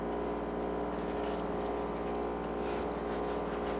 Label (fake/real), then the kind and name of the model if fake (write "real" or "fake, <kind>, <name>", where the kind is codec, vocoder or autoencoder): real